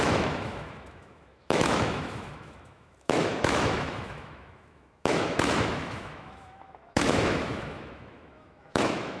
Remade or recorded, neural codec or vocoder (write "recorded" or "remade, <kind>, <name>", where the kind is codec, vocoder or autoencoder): remade, autoencoder, DAC-VAE